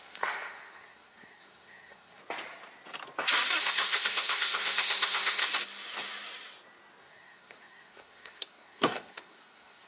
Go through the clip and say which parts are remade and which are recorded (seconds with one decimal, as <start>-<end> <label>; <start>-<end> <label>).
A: 0.0-2.2 remade; 2.2-3.6 recorded; 3.6-5.4 remade; 5.4-7.0 recorded; 7.0-9.9 remade